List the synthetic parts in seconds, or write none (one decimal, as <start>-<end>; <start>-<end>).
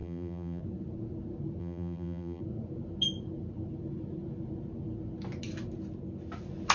0.0-0.6; 1.6-2.4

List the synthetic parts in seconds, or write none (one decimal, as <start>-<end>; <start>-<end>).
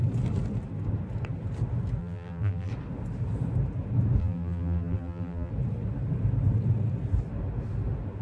2.0-2.7; 4.2-5.5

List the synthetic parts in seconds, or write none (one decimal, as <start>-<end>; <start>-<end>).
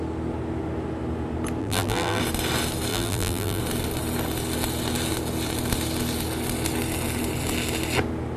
1.6-2.2; 2.9-3.6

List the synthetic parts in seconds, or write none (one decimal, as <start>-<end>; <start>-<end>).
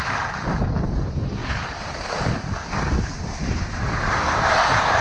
1.4-4.4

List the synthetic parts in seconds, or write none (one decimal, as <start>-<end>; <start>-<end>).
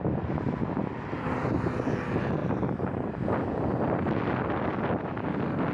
2.4-3.1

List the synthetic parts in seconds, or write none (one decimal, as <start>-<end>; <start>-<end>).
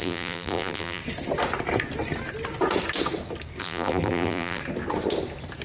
0.0-1.0; 3.6-4.6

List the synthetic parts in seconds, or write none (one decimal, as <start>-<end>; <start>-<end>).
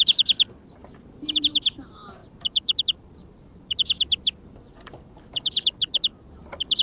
0.0-3.8; 4.5-6.8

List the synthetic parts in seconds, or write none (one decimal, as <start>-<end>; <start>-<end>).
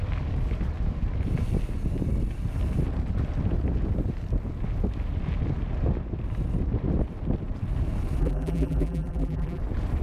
8.2-9.6